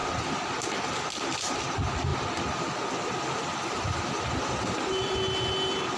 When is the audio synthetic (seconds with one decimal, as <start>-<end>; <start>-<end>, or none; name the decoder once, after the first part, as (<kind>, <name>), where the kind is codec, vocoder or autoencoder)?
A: none